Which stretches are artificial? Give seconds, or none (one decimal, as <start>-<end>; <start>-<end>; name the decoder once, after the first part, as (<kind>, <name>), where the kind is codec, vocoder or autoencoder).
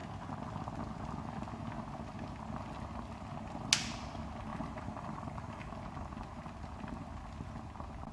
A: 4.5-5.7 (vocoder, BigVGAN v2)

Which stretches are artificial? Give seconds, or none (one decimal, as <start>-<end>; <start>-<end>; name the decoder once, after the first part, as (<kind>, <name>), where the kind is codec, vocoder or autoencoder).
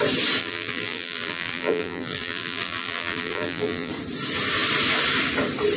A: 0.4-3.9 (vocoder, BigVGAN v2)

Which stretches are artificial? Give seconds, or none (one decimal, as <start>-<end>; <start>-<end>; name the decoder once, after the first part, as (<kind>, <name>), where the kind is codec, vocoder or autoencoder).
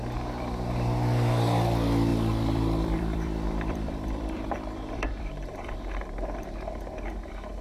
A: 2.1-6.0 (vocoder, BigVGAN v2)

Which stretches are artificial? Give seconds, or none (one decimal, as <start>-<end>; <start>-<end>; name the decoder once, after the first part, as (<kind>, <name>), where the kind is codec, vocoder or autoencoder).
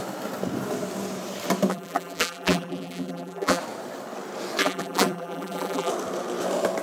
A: 1.7-3.6 (vocoder, BigVGAN v2); 4.6-5.9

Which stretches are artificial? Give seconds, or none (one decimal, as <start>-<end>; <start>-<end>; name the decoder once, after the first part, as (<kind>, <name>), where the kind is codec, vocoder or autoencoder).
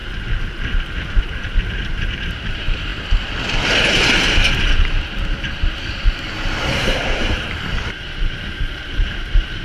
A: 1.2-2.9 (vocoder, BigVGAN v2); 6.4-9.6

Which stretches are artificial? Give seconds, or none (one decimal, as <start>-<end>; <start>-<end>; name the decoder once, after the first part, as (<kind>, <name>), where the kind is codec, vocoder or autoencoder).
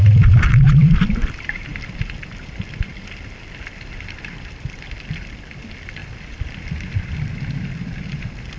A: none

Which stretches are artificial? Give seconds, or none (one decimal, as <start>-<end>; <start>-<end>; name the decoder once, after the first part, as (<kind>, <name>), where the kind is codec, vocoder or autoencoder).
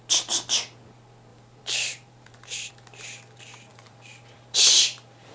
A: 1.3-2.7 (vocoder, BigVGAN v2); 3.7-5.3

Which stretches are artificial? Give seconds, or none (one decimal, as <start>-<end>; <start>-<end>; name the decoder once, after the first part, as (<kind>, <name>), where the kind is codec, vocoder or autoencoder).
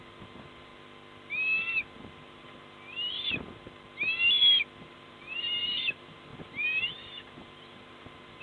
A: 0.0-0.7 (vocoder, BigVGAN v2); 4.8-8.4